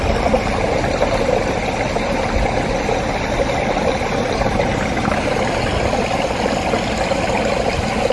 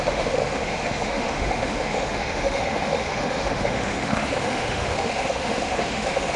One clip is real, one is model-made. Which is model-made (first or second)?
second